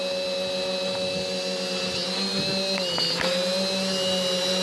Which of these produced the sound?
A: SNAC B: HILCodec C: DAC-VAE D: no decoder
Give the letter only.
D